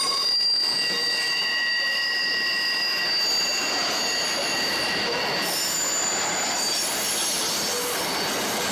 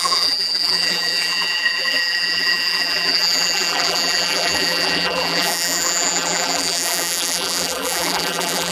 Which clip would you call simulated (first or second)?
second